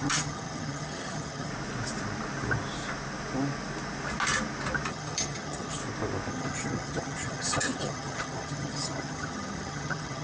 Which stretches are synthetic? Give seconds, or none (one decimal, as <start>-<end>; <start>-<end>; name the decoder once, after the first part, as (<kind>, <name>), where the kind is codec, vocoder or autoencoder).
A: 0.0-1.5 (vocoder, HiFi-GAN); 4.9-5.8; 6.3-10.2